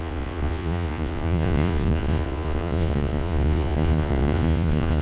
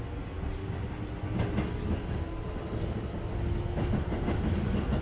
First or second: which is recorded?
second